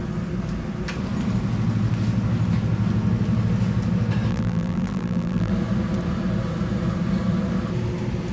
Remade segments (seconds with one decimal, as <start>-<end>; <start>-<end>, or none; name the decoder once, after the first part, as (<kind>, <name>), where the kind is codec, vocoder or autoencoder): 4.3-5.5 (vocoder, BigVGAN v2)